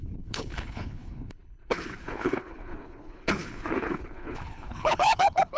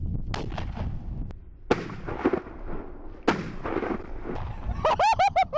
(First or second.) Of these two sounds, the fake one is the first